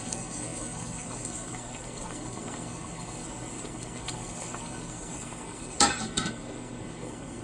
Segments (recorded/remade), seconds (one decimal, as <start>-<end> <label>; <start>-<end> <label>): 0.0-7.4 remade